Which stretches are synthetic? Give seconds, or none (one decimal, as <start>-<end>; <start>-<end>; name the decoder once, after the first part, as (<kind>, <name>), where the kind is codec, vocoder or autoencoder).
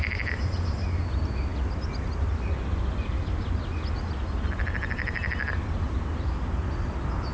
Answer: none